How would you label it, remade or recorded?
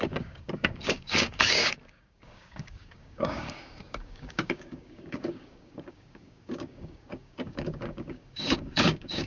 remade